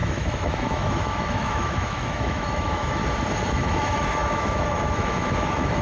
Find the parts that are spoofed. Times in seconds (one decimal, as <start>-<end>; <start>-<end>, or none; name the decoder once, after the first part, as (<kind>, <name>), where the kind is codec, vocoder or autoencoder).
0.0-3.0 (autoencoder, DAC-VAE); 3.5-5.8